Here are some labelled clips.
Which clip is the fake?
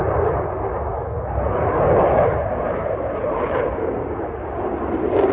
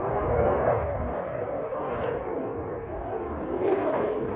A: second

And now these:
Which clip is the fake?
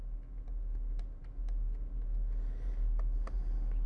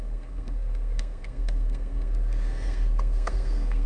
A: second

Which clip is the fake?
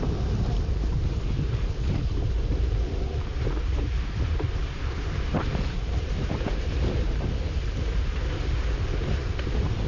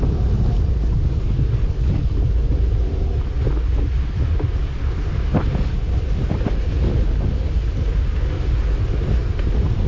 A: first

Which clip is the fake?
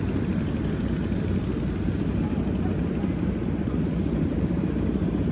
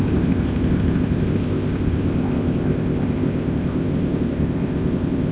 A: second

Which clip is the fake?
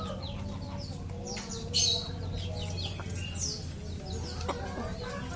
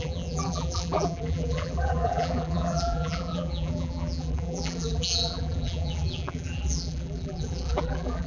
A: second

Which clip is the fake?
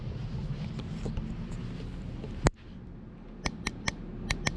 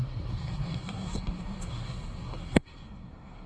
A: second